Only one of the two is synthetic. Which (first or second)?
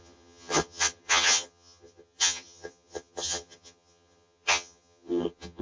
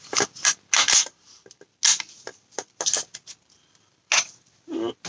first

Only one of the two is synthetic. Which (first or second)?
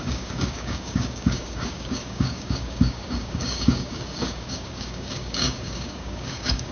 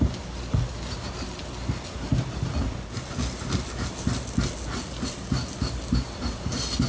first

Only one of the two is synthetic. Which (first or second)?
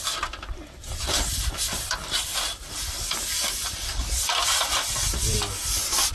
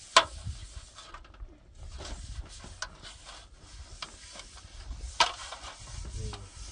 first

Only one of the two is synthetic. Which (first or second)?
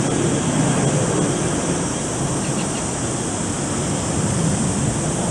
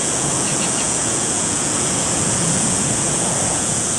second